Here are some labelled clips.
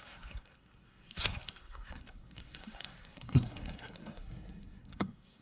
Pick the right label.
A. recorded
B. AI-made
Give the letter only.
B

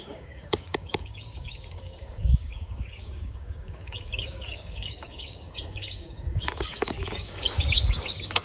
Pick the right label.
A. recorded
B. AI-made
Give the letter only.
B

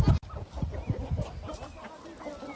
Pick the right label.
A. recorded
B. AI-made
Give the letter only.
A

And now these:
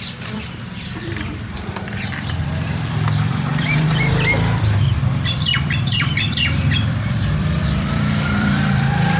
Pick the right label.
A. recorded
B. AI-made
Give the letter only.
B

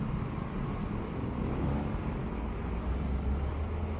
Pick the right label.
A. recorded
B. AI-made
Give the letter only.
A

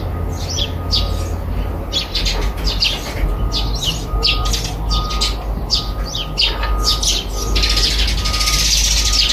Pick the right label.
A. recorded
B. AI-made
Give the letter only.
A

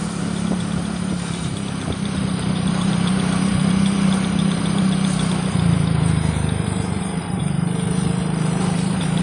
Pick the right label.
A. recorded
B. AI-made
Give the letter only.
B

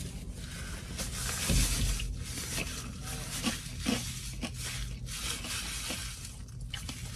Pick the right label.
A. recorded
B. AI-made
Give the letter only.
A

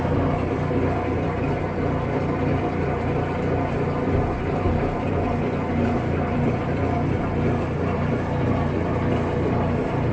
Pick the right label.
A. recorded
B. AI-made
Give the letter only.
B